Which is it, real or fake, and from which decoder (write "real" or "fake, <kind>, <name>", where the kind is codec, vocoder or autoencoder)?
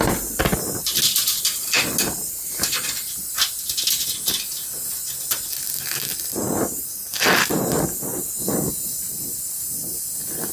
real